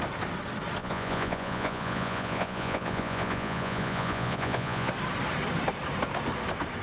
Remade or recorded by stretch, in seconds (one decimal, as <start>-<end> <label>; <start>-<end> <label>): 0.0-0.8 recorded; 0.8-4.9 remade; 4.9-6.8 recorded